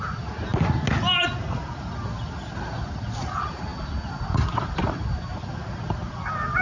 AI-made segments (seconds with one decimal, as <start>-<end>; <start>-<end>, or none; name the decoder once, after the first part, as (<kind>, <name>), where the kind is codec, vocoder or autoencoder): none